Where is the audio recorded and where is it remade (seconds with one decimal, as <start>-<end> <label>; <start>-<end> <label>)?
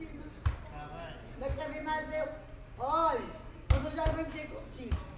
0.0-5.2 recorded